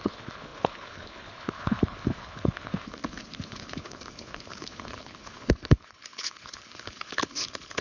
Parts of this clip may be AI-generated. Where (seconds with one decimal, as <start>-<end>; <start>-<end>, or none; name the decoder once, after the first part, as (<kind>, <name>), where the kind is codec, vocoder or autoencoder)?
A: 0.0-7.8 (codec, HILCodec)

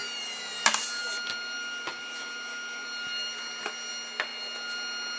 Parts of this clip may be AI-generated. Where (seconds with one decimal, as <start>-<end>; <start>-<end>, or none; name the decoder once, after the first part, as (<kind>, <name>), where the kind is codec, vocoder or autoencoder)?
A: none

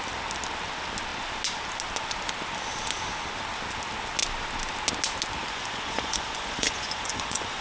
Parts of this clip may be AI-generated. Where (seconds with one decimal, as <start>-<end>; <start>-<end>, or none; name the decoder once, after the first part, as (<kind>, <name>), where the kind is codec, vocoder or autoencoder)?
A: 5.4-7.6 (vocoder, Vocos)

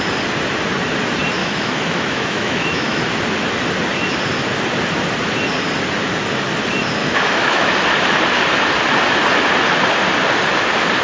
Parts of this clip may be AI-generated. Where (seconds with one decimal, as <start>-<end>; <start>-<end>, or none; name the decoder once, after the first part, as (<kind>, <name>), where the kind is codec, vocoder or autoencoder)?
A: 1.4-3.0 (autoencoder, DAC-VAE); 7.0-7.7